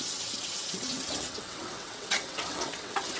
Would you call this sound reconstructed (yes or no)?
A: yes